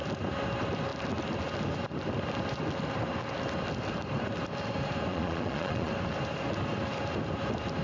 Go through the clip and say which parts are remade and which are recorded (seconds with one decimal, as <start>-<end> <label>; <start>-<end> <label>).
0.0-5.1 recorded; 5.1-5.9 remade; 5.9-7.8 recorded